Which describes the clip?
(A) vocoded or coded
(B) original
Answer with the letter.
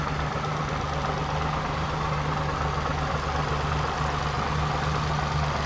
B